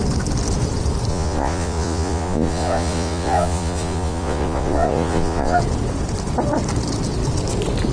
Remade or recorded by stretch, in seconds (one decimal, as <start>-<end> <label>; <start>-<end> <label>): 0.0-1.1 recorded; 1.1-5.6 remade; 5.6-7.9 recorded